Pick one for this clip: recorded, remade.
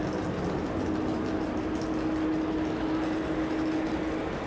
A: recorded